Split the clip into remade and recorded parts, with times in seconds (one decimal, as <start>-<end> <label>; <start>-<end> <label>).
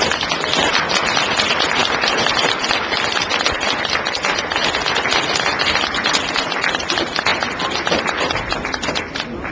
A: 0.0-9.5 recorded